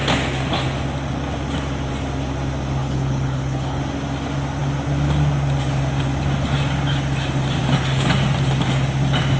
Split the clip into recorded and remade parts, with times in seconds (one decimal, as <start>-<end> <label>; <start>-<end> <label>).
0.0-2.8 recorded; 2.8-3.8 remade; 3.8-9.4 recorded